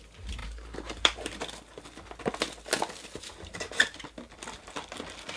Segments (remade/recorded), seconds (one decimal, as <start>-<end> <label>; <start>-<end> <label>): 0.0-0.4 recorded; 0.4-1.4 remade; 1.4-5.4 recorded